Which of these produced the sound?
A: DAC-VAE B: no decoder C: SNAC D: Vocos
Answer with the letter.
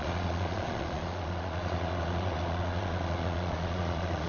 D